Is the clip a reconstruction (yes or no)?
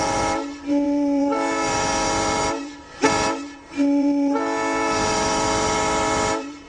yes